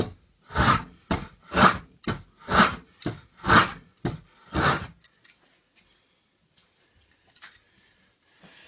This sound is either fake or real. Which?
real